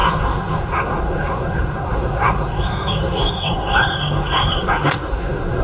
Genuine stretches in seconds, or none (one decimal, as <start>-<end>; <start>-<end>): none